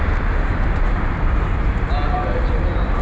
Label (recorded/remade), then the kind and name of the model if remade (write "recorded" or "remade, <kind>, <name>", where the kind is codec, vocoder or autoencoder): recorded